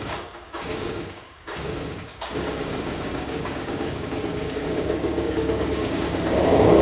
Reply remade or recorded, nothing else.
remade